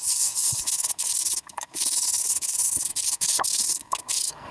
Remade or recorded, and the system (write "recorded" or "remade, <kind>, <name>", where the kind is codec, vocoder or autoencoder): remade, codec, SNAC